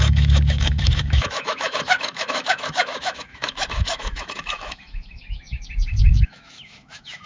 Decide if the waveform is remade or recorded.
remade